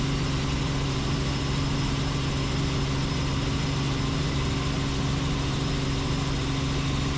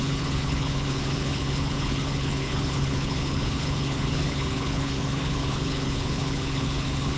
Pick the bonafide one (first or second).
first